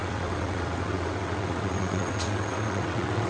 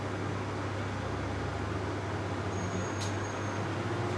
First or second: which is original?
second